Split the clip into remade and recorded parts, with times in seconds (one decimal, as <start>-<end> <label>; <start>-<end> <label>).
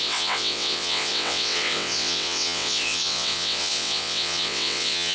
0.0-5.1 remade